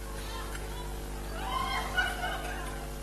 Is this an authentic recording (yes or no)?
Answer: yes